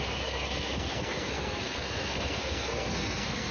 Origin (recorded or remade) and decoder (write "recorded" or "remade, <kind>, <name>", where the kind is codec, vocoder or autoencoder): remade, codec, SNAC